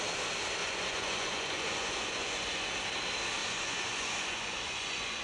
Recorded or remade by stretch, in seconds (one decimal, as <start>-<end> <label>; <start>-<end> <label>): 0.0-0.6 recorded; 0.6-2.7 remade; 2.7-3.4 recorded; 3.4-5.2 remade